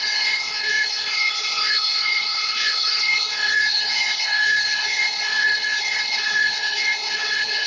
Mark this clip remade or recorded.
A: remade